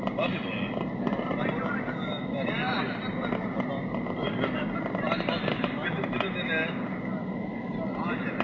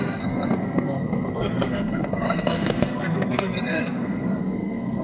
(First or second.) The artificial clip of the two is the second